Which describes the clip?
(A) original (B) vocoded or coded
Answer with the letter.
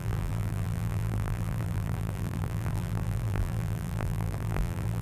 B